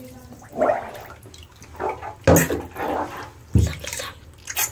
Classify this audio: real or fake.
real